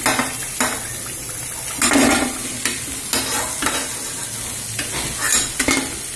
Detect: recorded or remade recorded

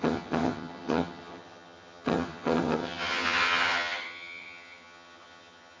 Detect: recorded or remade remade